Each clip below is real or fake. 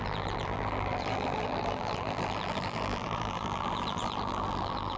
fake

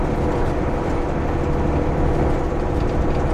real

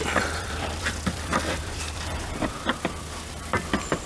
fake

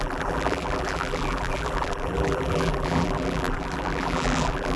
fake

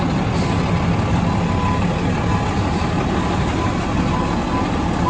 real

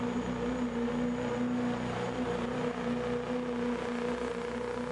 real